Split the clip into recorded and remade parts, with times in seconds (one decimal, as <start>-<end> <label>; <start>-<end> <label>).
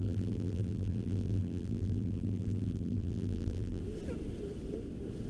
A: 0.0-3.8 remade; 3.8-5.3 recorded